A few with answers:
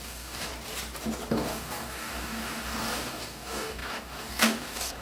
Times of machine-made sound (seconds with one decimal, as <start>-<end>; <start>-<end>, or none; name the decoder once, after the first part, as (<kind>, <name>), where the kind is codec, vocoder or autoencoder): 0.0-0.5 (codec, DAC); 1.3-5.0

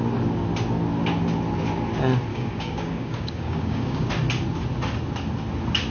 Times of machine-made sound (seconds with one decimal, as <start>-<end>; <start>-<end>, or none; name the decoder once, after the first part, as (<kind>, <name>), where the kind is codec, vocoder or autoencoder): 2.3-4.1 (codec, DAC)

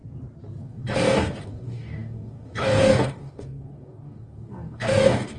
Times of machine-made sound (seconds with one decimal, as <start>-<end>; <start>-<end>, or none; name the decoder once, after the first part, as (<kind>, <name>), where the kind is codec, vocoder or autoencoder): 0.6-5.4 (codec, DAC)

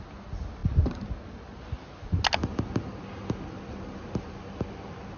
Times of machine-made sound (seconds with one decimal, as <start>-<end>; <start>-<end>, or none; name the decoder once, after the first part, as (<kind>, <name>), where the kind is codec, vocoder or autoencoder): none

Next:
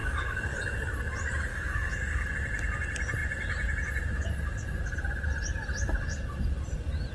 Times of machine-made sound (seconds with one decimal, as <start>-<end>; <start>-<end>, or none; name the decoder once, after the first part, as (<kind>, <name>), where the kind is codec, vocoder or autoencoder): 0.0-0.6 (codec, DAC); 1.5-2.3